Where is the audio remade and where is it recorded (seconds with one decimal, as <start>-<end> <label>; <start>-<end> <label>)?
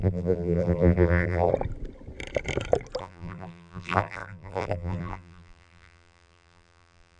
0.0-1.5 remade; 1.5-3.0 recorded; 3.0-7.2 remade